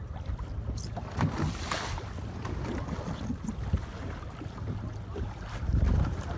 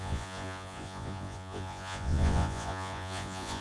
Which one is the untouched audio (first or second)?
first